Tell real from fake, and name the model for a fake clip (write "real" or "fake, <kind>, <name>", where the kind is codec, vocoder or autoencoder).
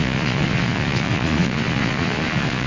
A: fake, vocoder, Vocos